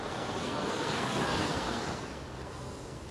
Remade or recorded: remade